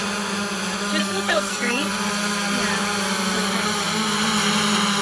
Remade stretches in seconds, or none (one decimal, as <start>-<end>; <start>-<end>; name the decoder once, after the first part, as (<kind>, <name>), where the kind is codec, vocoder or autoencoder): 1.0-1.9 (codec, SNAC)